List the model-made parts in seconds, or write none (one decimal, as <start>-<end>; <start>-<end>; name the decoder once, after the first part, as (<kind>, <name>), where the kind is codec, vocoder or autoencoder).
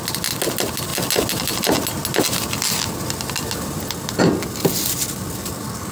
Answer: none